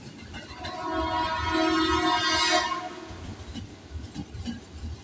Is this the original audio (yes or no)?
yes